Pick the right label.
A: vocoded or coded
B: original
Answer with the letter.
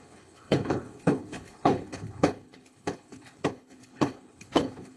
A